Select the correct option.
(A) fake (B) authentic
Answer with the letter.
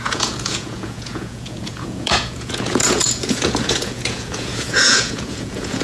A